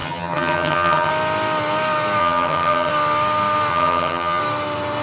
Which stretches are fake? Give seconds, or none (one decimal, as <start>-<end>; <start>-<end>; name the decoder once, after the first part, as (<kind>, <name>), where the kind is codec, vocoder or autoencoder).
0.0-1.1 (vocoder, HiFi-GAN); 2.2-2.9; 3.7-4.4